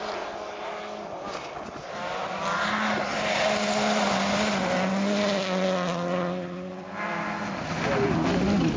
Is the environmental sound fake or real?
real